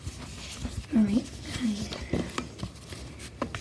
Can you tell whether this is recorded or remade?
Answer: recorded